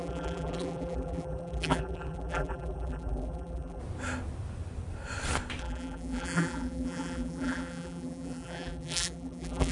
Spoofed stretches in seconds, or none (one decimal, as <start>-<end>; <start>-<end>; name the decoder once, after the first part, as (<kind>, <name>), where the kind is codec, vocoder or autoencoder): 0.0-3.8 (vocoder, BigVGAN v2); 5.6-9.7